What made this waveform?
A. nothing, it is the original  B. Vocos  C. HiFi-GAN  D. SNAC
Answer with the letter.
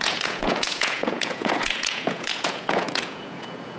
B